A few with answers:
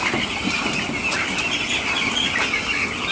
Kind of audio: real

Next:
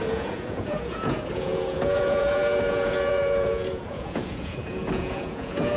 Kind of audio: fake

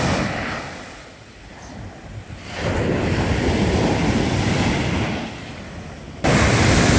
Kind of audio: real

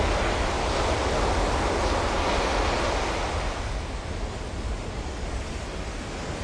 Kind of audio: real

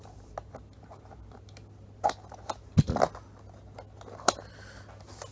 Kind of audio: real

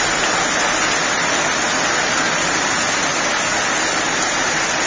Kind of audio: real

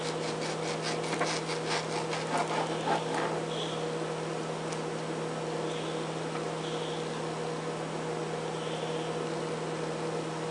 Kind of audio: real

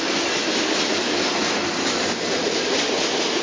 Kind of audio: real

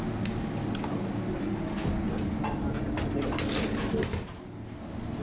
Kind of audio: real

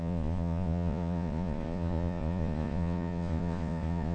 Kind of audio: fake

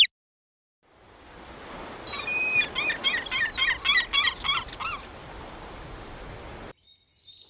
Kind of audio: real